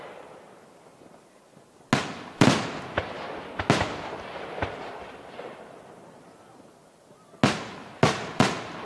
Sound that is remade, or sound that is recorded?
recorded